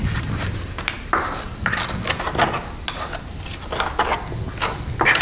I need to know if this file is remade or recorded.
recorded